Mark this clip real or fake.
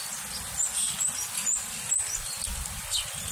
real